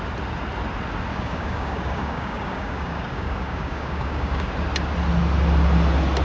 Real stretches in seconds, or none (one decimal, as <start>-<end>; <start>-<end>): 0.0-1.1; 4.5-6.2